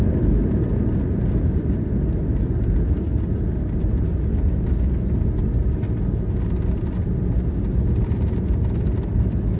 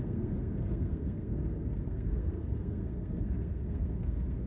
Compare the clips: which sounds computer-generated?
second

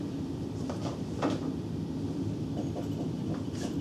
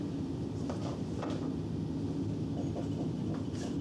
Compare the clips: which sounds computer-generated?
first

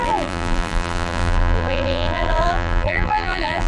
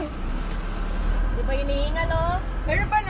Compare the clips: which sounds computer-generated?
first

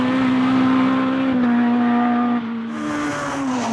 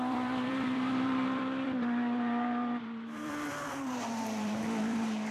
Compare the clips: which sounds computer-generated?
second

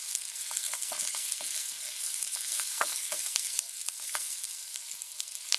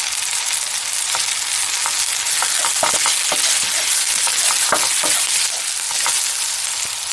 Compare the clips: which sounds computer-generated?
first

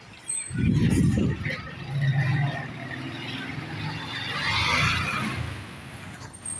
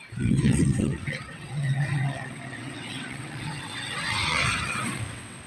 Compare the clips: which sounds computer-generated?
second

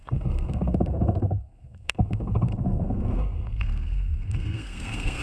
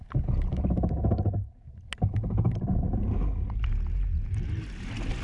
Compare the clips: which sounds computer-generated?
first